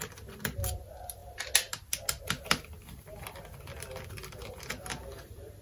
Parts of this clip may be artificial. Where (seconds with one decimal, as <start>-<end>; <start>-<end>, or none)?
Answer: none